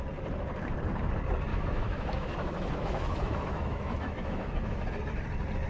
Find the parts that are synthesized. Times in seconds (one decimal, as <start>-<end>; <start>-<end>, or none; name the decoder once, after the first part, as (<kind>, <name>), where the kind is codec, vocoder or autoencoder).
1.5-4.9 (autoencoder, DAC-VAE)

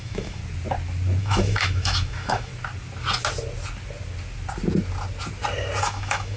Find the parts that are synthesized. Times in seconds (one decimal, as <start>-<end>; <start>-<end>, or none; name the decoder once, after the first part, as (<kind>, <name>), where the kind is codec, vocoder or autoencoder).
0.0-0.4 (autoencoder, DAC-VAE); 1.2-2.5; 5.8-6.4